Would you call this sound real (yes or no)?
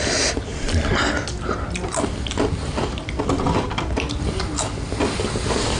yes